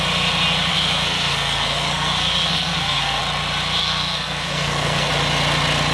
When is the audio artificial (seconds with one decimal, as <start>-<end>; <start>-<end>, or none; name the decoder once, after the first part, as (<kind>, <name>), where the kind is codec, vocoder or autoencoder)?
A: 0.7-3.2 (codec, SNAC); 3.8-5.1